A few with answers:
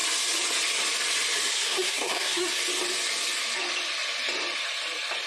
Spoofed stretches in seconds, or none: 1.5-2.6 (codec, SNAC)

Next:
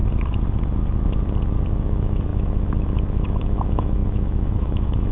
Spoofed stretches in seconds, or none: 1.7-5.1 (autoencoder, DAC-VAE)

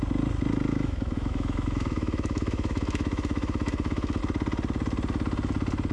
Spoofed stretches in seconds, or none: 0.7-4.2 (autoencoder, DAC-VAE)